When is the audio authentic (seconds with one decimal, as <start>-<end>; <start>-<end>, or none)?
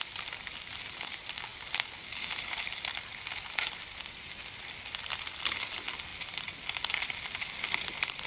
0.0-8.3